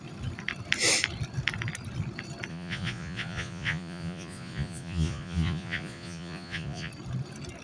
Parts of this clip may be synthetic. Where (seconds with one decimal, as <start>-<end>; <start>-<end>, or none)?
2.5-6.9